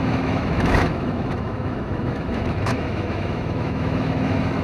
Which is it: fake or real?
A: fake